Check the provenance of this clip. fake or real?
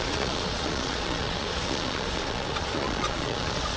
fake